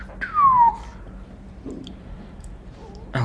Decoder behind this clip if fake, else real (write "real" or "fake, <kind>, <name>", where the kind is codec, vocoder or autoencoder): real